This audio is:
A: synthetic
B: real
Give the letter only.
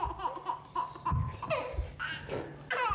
B